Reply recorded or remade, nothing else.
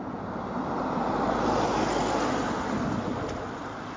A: recorded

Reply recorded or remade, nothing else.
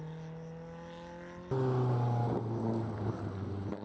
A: recorded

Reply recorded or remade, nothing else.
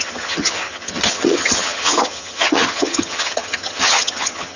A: remade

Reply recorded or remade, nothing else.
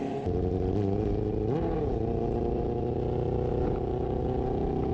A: recorded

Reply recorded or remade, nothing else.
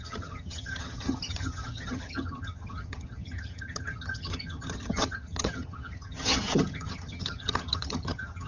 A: remade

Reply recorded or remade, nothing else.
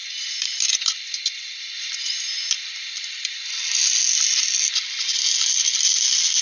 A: recorded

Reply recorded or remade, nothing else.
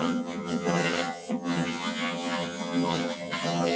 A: remade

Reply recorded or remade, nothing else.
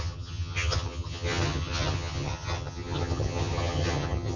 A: remade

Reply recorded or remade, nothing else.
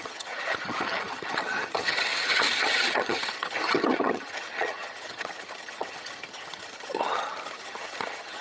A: remade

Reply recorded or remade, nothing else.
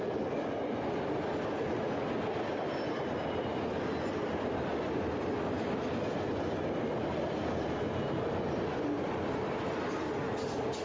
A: recorded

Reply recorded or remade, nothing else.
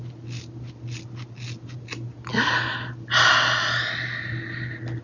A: recorded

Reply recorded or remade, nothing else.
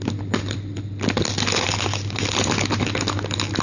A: recorded